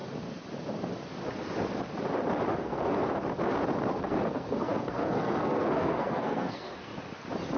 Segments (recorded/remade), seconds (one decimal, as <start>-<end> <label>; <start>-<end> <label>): 0.0-2.5 recorded; 2.5-3.0 remade; 3.0-3.9 recorded; 3.9-6.9 remade; 6.9-7.6 recorded